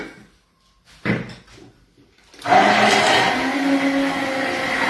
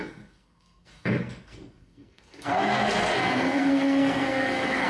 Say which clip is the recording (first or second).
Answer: first